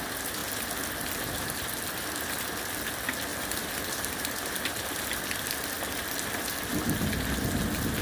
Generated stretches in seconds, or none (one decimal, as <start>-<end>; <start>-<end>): 3.3-5.2